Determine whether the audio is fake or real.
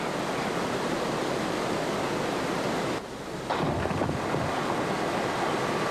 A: real